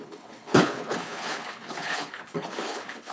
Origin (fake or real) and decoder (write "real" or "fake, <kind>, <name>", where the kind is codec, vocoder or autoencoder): fake, codec, HILCodec